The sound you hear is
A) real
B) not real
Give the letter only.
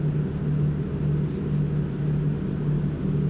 A